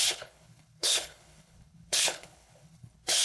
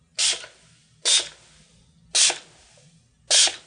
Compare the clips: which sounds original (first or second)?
second